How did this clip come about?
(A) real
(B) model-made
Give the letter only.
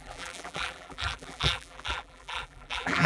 B